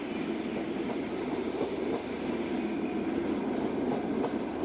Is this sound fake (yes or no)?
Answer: no